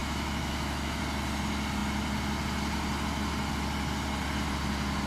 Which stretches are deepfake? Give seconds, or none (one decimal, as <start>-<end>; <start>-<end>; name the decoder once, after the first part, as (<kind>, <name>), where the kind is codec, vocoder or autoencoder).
0.0-1.0 (autoencoder, DAC-VAE)